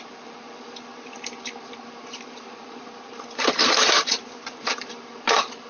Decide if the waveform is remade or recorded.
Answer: remade